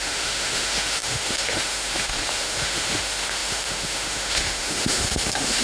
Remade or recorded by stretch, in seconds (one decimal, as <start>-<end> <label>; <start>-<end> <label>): 0.0-5.6 remade

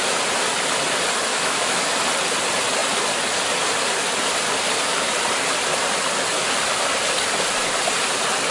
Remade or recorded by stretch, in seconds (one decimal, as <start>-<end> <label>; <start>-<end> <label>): 0.0-1.3 recorded; 1.3-1.9 remade; 1.9-8.5 recorded

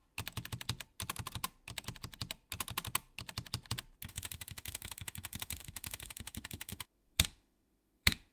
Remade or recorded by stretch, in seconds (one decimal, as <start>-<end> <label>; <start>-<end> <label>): 0.0-4.1 recorded; 4.1-8.3 remade

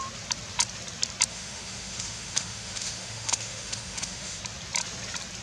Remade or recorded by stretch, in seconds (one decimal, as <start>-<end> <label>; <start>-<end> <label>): 0.0-1.3 recorded; 1.3-4.4 remade; 4.4-5.4 recorded

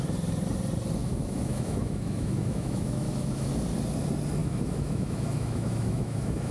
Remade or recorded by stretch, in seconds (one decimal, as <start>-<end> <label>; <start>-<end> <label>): 0.0-1.0 recorded; 1.0-3.5 remade; 3.5-4.4 recorded; 4.4-6.5 remade

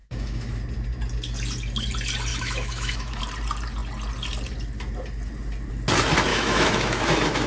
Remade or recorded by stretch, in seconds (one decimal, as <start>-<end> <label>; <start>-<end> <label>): 0.0-0.6 remade; 0.6-2.3 recorded; 2.3-3.2 remade; 3.2-6.3 recorded; 6.3-7.5 remade

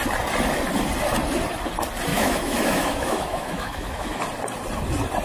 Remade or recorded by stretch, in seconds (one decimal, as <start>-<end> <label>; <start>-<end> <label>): 0.0-2.1 recorded; 2.1-4.2 remade; 4.2-5.2 recorded